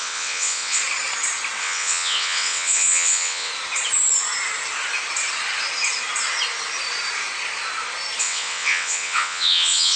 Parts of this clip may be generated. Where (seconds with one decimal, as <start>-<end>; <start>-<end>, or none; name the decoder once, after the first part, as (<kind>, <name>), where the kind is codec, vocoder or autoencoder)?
0.0-0.8 (vocoder, WaveNeXt); 1.6-3.5; 8.2-10.0